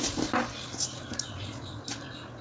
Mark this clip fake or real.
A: real